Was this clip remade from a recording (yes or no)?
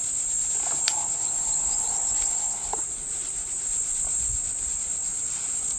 no